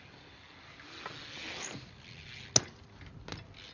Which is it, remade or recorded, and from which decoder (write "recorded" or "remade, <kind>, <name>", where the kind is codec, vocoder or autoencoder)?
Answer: recorded